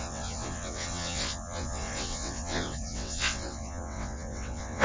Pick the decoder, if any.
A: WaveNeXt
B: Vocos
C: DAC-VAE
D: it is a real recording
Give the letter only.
A